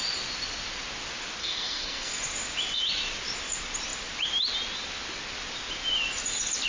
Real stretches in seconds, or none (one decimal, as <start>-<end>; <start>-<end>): 0.0-1.4; 2.2-6.7